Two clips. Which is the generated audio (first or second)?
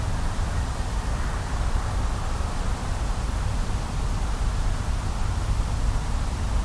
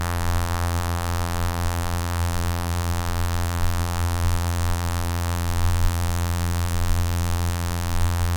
second